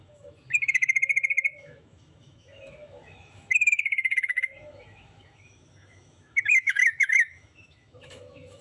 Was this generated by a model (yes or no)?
yes